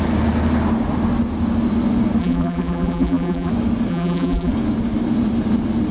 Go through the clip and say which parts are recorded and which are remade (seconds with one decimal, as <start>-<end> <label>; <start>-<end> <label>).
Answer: 0.0-2.2 recorded; 2.2-3.5 remade; 3.5-3.9 recorded; 3.9-4.5 remade; 4.5-5.9 recorded